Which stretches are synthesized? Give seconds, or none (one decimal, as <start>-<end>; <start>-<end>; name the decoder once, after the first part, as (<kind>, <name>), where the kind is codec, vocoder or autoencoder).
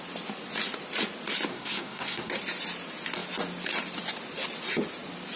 1.5-2.3 (codec, SNAC)